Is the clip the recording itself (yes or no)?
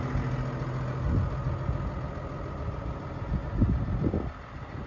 yes